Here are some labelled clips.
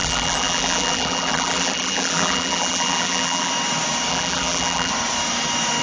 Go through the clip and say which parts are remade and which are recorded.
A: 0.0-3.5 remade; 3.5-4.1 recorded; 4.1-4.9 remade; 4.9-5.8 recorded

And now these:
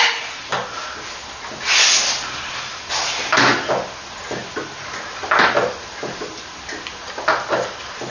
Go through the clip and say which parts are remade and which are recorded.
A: 0.0-8.1 recorded